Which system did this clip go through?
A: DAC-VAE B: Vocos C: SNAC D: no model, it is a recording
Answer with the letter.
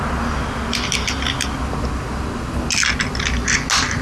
D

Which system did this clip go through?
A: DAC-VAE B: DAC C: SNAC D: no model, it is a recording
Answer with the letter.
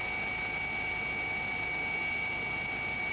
D